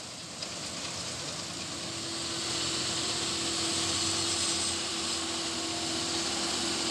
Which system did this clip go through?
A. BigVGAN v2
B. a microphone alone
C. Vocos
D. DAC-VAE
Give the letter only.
B